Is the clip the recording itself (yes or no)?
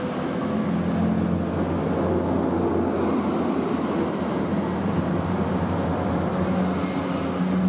yes